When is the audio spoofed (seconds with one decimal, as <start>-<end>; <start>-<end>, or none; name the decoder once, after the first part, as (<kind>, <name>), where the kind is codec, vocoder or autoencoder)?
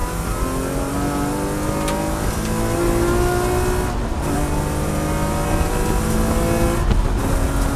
none